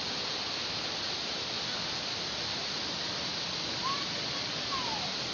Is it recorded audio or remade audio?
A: recorded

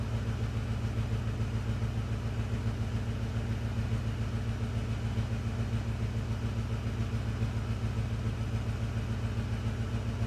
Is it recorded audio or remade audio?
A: recorded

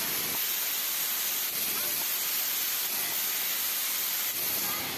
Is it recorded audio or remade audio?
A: recorded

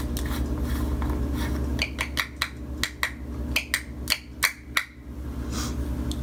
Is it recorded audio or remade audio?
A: recorded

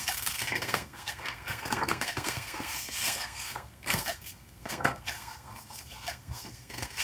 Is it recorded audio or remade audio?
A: remade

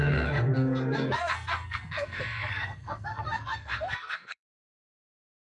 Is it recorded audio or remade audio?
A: remade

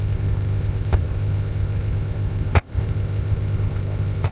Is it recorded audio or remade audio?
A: remade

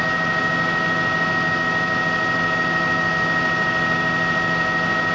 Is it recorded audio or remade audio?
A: recorded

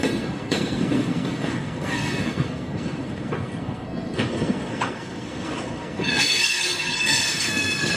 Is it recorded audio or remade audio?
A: remade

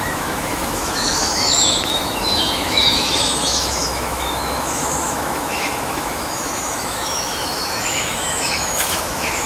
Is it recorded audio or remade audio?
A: remade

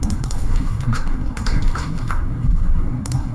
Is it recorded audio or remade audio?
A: remade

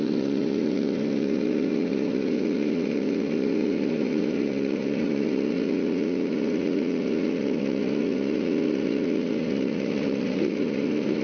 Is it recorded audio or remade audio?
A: remade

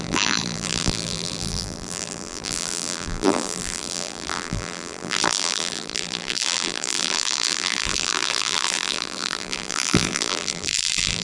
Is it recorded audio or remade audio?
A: remade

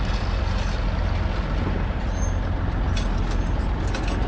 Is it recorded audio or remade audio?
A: recorded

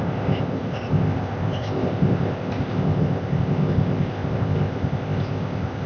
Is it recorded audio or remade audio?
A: remade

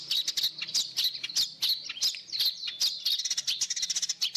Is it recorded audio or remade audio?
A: recorded